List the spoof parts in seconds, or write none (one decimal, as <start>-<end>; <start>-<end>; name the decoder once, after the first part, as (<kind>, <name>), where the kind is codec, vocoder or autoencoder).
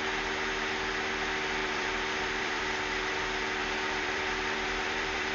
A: 1.6-2.6 (vocoder, BigVGAN v2); 3.6-5.3